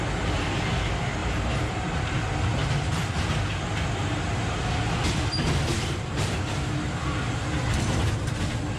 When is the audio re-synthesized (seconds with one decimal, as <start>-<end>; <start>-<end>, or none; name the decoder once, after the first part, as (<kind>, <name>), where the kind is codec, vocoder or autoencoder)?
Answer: 1.2-2.2 (vocoder, BigVGAN v2); 2.6-3.1; 5.7-6.9